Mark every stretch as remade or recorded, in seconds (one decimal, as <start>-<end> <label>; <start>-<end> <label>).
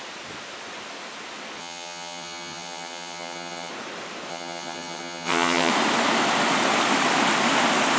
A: 0.0-1.6 recorded; 1.6-3.7 remade; 3.7-4.3 recorded; 4.3-5.7 remade; 5.7-8.0 recorded